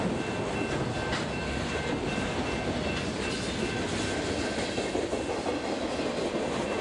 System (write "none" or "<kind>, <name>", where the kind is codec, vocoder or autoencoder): none